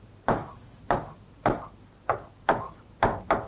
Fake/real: real